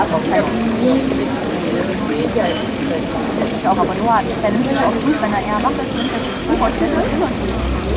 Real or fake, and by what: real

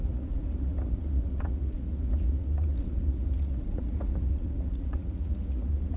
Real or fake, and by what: fake, vocoder, Vocos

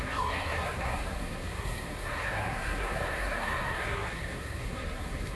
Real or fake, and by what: fake, codec, SNAC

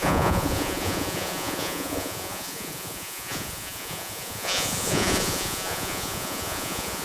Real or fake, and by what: fake, vocoder, Vocos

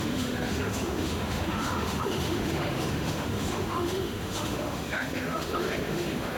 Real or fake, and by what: fake, autoencoder, DAC-VAE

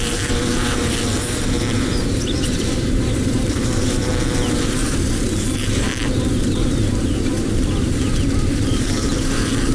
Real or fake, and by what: fake, vocoder, BigVGAN v2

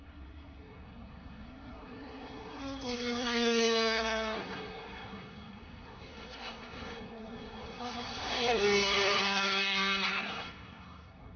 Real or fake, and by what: fake, codec, SNAC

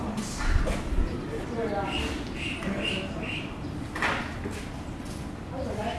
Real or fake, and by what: real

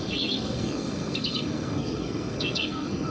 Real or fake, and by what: fake, codec, SNAC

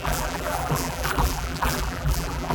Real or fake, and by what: fake, vocoder, BigVGAN v2